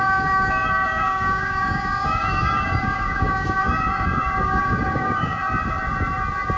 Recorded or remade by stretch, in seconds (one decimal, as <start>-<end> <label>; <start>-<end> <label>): 0.0-5.4 remade; 5.4-6.6 recorded